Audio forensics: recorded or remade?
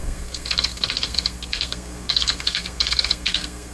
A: remade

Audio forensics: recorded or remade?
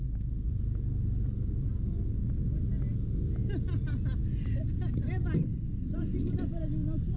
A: recorded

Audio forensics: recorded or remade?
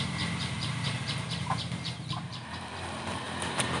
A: remade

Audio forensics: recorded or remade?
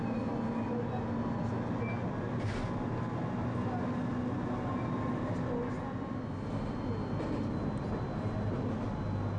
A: recorded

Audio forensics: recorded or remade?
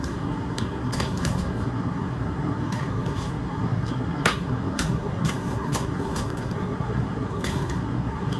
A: remade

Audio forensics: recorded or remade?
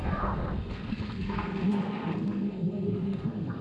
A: remade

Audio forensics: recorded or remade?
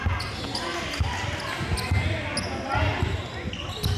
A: recorded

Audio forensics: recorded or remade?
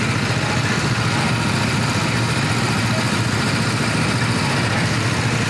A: recorded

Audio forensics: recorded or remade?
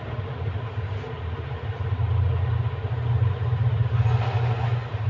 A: recorded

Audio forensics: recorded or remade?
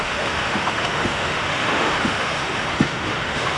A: remade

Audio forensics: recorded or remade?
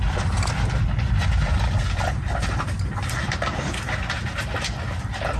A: recorded